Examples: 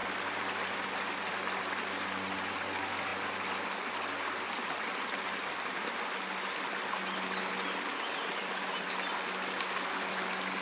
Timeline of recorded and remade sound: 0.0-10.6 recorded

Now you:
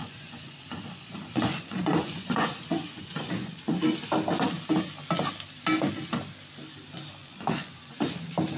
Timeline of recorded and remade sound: 0.0-3.8 remade; 3.8-7.2 recorded; 7.2-8.2 remade; 8.2-8.6 recorded

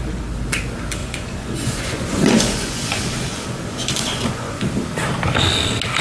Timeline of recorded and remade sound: 0.0-1.0 recorded; 1.0-4.6 remade; 4.6-6.0 recorded

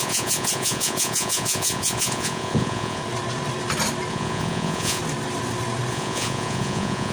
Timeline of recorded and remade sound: 0.0-3.0 remade; 3.0-4.1 recorded; 4.1-5.0 remade; 5.0-5.9 recorded; 5.9-7.1 remade

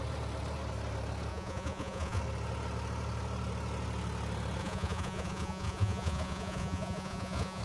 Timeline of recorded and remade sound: 0.0-1.3 recorded; 1.3-2.2 remade; 2.2-4.6 recorded; 4.6-7.6 remade

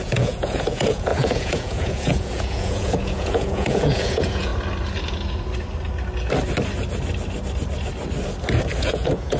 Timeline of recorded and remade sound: 0.0-4.5 remade; 4.5-8.8 recorded; 8.8-9.4 remade